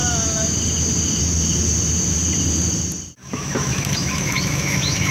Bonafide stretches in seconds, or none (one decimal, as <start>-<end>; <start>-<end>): 0.0-3.2